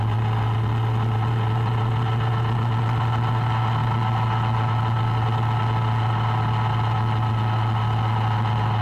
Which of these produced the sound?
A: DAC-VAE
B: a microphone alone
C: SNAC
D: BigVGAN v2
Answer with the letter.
B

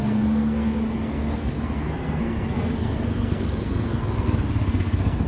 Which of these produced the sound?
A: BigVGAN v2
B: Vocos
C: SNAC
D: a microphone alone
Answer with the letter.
C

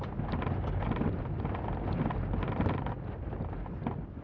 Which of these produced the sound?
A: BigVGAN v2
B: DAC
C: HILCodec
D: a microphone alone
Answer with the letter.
D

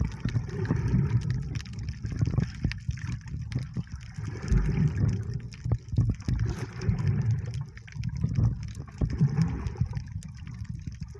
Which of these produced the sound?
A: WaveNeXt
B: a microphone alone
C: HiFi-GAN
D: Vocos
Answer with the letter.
B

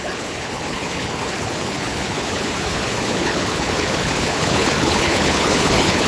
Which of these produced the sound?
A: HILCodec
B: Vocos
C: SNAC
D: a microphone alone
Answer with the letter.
A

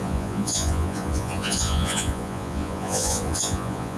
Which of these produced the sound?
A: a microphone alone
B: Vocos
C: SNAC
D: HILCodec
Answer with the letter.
B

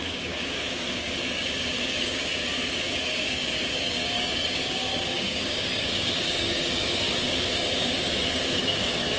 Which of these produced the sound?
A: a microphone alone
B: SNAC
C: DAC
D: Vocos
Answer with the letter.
C